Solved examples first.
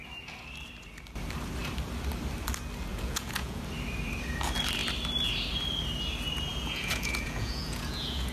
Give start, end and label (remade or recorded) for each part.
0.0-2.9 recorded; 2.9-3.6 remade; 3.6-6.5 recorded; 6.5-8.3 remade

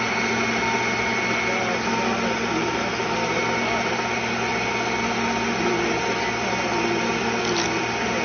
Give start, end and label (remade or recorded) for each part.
0.0-8.2 recorded

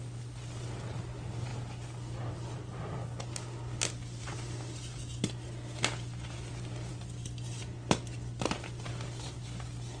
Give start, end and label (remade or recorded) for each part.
0.0-10.0 recorded

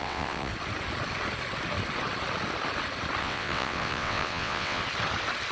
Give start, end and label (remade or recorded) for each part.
0.0-0.5 remade; 0.5-3.2 recorded; 3.2-4.8 remade; 4.8-5.5 recorded

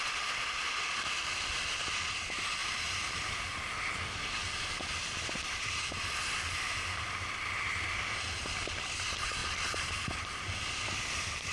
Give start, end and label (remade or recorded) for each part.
0.0-11.5 recorded

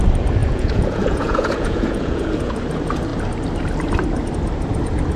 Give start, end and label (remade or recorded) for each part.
0.0-0.4 recorded; 0.4-2.6 remade; 2.6-5.2 recorded

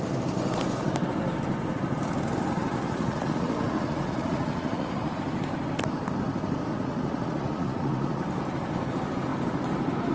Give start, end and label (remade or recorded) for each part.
0.0-2.7 recorded; 2.7-5.1 remade; 5.1-6.7 recorded; 6.7-8.2 remade; 8.2-10.1 recorded

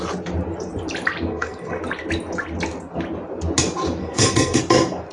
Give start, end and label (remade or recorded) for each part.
0.0-1.3 recorded; 1.3-1.8 remade; 1.8-4.0 recorded; 4.0-4.6 remade; 4.6-5.1 recorded